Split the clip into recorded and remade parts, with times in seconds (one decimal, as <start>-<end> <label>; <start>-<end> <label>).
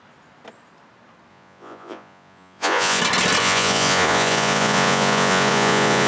0.0-1.3 recorded; 1.3-3.0 remade; 3.0-3.4 recorded; 3.4-6.1 remade